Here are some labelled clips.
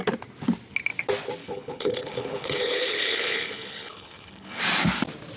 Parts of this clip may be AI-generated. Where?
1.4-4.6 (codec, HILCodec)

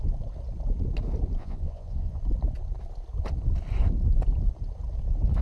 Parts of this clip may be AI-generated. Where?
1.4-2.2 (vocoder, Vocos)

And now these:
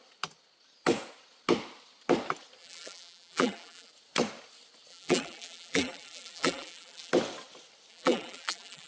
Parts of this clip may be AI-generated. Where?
2.6-3.9 (vocoder, BigVGAN v2); 4.9-7.1; 7.9-8.9